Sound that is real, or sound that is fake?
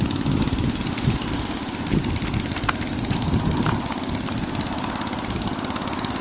real